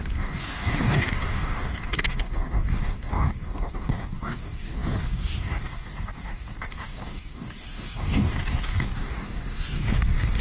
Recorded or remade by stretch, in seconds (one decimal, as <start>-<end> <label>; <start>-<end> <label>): 0.0-10.4 remade